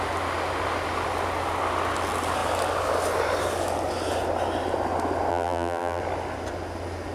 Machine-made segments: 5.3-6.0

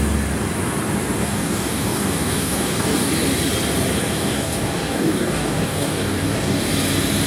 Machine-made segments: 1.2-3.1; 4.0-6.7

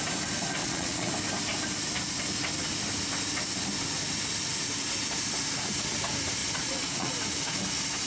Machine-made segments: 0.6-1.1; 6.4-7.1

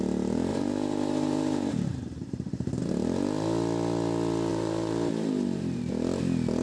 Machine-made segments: 0.5-2.9; 4.5-5.9